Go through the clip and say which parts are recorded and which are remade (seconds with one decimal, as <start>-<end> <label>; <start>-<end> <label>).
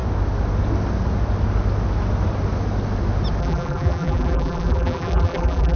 0.0-3.4 recorded; 3.4-5.8 remade